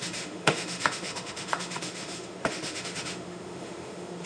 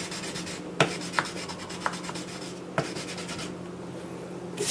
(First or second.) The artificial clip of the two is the first